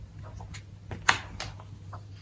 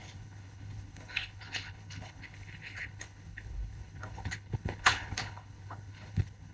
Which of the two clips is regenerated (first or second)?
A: second